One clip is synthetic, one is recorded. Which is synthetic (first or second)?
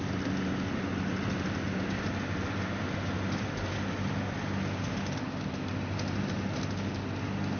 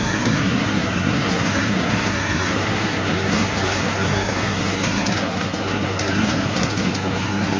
second